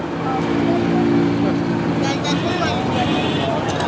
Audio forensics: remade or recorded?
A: recorded